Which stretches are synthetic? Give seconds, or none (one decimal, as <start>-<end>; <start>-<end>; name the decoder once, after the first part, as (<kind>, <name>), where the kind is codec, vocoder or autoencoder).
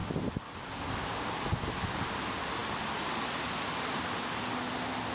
none